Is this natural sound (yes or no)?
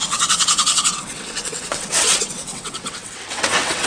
no